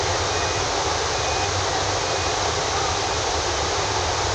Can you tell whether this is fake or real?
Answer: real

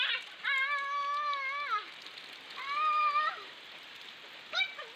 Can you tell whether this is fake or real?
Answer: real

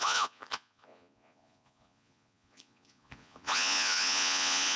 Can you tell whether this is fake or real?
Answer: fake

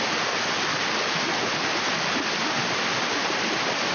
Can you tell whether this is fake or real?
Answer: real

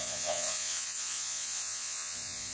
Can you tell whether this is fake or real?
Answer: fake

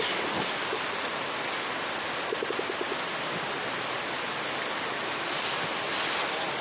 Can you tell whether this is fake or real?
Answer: real